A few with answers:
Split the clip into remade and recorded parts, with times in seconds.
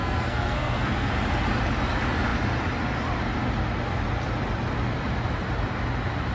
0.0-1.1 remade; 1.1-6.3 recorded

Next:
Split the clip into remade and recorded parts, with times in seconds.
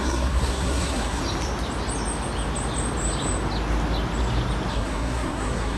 0.0-1.2 remade; 1.2-4.7 recorded; 4.7-5.8 remade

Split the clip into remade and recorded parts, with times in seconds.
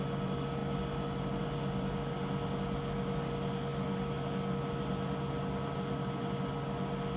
0.0-7.2 recorded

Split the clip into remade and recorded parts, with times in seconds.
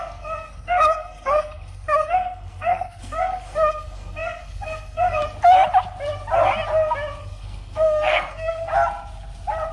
0.0-5.2 remade; 5.2-7.2 recorded; 7.2-8.7 remade; 8.7-9.7 recorded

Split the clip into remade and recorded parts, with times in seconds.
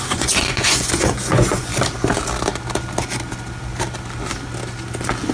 0.0-1.7 remade; 1.7-5.3 recorded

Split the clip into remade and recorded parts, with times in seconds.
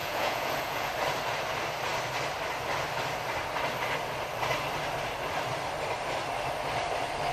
0.0-0.9 remade; 0.9-7.3 recorded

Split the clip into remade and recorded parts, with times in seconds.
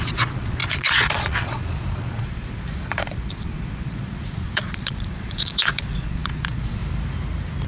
0.0-6.8 remade; 6.8-7.7 recorded